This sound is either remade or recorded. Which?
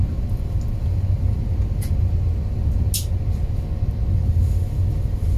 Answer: recorded